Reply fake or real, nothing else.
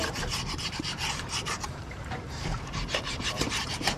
fake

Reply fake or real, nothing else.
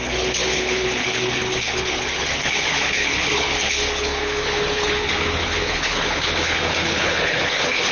fake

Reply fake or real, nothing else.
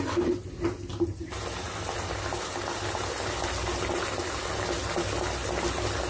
real